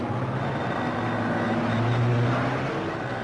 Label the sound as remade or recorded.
recorded